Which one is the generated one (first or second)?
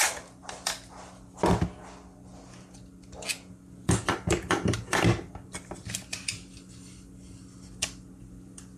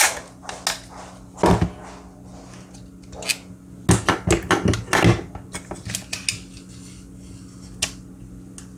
first